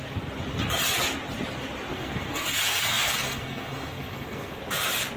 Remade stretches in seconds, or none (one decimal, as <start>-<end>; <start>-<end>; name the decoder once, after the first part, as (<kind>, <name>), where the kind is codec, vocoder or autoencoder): 1.9-4.6 (codec, SNAC)